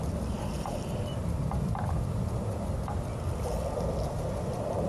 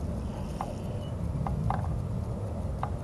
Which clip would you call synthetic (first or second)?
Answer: first